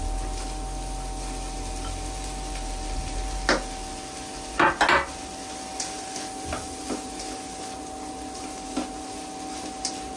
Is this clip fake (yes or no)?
no